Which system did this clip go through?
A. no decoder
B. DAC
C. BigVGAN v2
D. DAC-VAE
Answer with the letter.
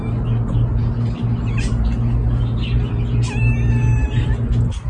A